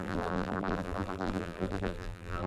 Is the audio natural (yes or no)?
no